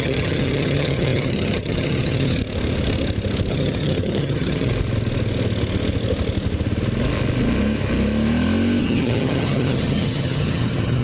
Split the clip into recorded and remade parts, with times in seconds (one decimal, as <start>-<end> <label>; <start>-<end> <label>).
0.0-2.4 remade; 2.4-3.5 recorded; 3.5-4.7 remade; 4.7-8.8 recorded; 8.8-11.0 remade